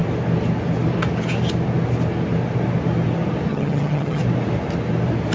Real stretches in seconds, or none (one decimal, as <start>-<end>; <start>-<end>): 0.0-3.5; 4.2-5.3

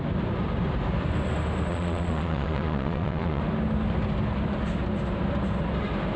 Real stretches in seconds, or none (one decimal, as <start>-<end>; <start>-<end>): 0.0-1.7; 3.4-6.2

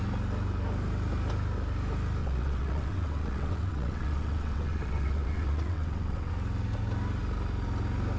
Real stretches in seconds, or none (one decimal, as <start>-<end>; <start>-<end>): 0.0-2.2; 6.3-8.2

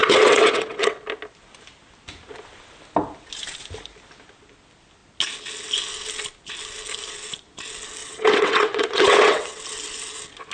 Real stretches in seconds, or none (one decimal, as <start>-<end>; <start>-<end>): 1.0-8.0; 9.6-10.5

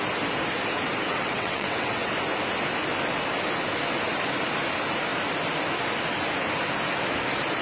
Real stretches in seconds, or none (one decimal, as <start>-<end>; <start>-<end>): 0.0-1.1; 2.1-7.6